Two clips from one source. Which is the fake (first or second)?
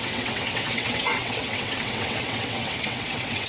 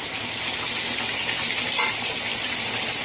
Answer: first